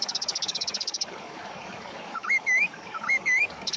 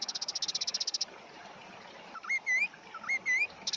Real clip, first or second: second